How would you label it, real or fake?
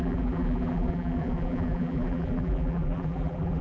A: fake